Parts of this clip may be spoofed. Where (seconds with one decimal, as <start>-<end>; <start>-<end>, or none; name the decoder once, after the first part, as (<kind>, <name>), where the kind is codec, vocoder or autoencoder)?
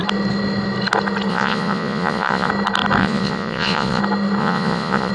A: 1.3-2.5 (vocoder, Vocos); 3.0-4.0; 4.4-5.1